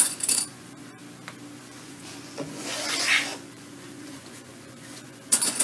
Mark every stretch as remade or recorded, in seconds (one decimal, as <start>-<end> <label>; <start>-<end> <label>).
0.0-1.0 remade; 1.0-1.6 recorded; 1.6-5.6 remade